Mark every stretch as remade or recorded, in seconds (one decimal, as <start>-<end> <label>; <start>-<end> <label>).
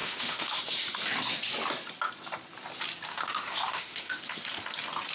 0.0-0.6 remade; 0.6-3.1 recorded; 3.1-4.2 remade; 4.2-5.1 recorded